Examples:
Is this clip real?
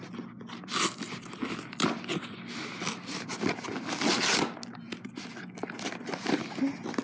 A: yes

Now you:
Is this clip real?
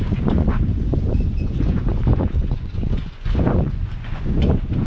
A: no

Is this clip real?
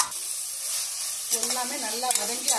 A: yes